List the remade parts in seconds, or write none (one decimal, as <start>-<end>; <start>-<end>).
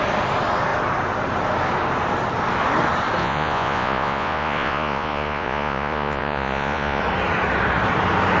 3.2-7.0